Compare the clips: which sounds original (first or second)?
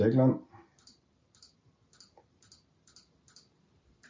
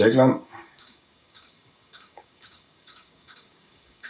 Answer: first